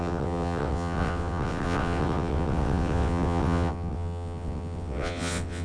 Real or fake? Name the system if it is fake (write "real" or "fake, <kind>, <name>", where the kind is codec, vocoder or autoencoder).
fake, vocoder, WaveNeXt